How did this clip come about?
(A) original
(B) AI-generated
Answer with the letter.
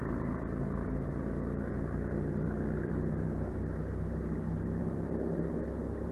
B